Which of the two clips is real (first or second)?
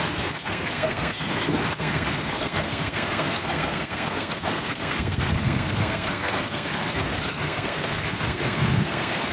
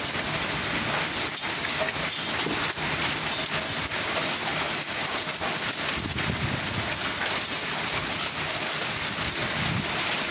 second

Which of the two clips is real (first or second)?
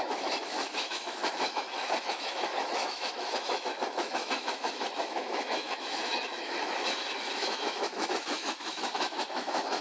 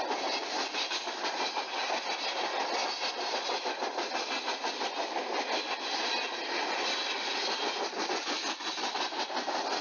second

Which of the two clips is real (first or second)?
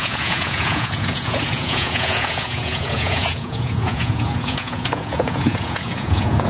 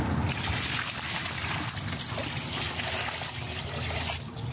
second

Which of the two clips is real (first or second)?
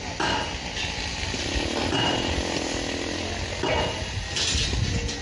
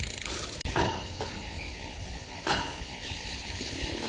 first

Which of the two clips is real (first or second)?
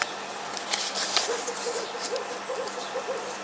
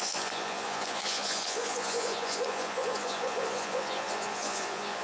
first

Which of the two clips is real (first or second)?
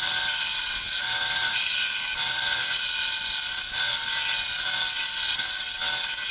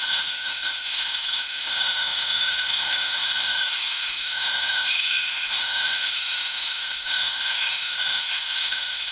first